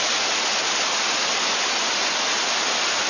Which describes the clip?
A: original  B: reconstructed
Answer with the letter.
A